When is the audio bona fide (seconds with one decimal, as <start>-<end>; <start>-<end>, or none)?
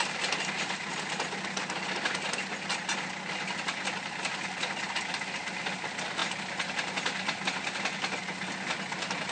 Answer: 0.0-9.3